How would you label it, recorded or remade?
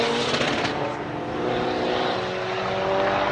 recorded